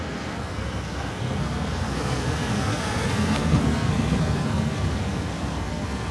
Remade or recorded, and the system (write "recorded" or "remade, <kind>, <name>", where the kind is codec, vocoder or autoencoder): remade, codec, SNAC